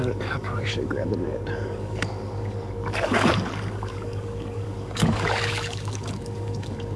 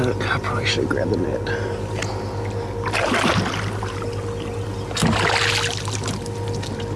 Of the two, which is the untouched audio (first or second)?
second